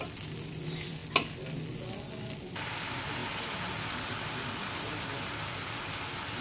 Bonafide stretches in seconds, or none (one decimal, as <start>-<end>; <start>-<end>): 1.0-2.2; 3.2-6.4

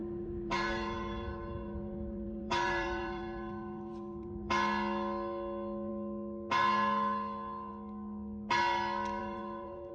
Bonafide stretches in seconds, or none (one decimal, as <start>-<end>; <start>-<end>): 4.5-9.2